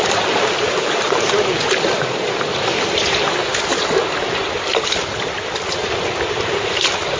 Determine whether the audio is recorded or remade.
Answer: recorded